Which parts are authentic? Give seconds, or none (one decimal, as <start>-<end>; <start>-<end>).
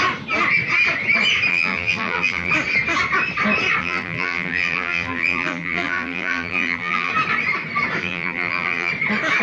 0.0-1.5; 2.5-3.8; 7.1-8.0; 8.9-9.4